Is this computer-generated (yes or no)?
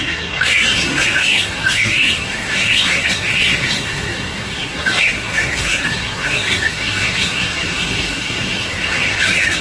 yes